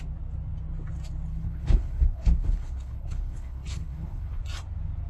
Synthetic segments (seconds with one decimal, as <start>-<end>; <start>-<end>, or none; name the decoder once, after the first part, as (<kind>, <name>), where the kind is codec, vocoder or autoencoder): 1.3-4.4 (codec, HILCodec)